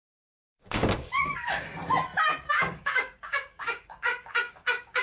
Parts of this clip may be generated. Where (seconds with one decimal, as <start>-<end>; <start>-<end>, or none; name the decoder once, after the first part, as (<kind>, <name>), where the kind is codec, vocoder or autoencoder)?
0.0-1.7 (codec, DAC); 2.5-5.0